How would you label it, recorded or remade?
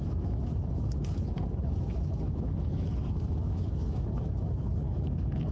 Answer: remade